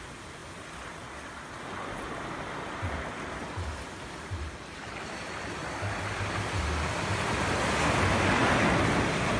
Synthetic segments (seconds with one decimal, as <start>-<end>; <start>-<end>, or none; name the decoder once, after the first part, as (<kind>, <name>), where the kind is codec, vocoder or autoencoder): none